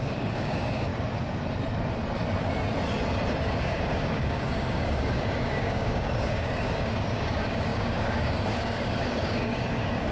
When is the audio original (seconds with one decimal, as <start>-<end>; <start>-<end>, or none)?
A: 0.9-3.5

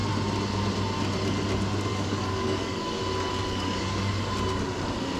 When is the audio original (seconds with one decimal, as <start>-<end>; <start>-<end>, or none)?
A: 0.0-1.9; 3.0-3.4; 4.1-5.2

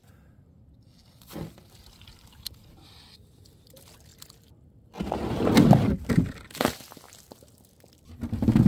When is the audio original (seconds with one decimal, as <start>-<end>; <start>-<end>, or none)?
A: 0.0-8.7

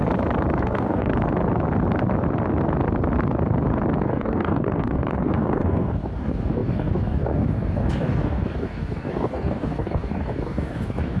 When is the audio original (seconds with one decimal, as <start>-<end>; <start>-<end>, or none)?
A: 0.0-0.6; 1.1-4.0

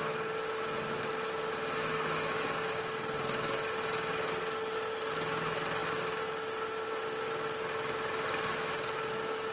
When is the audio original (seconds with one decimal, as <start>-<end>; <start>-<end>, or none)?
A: 0.0-1.8; 4.3-9.5

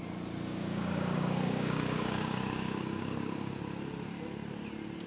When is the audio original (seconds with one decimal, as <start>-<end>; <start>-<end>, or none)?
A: 0.0-0.5; 3.6-5.1